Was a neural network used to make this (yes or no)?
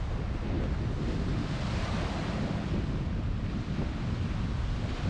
no